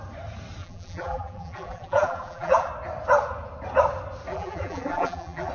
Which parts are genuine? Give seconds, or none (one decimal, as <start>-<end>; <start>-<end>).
0.0-0.6; 2.7-4.3

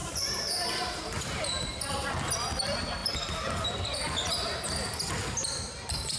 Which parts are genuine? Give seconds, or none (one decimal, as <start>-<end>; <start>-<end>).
2.1-6.2

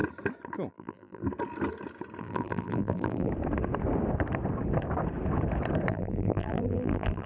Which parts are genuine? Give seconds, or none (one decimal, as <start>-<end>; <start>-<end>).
0.0-0.7; 1.2-2.2; 3.3-5.9